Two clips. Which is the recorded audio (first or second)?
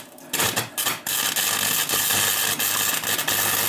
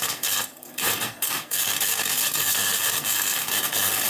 first